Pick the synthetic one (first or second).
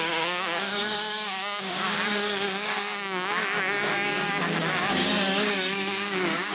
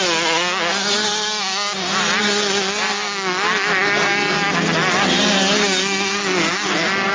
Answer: first